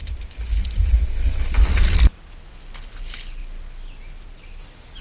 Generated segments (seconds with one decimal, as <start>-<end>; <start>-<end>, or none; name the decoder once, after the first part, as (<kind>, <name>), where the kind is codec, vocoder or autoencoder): none